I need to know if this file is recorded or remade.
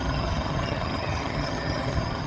remade